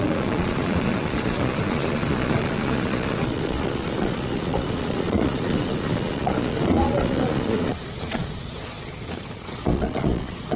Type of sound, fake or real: fake